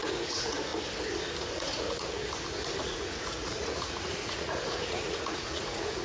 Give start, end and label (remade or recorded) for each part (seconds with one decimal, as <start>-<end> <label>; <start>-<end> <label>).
0.0-0.7 remade; 0.7-1.4 recorded; 1.4-2.2 remade; 2.2-2.8 recorded; 2.8-6.0 remade